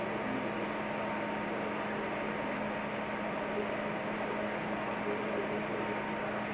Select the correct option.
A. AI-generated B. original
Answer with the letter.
B